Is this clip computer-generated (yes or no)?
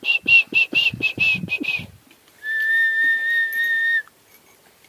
no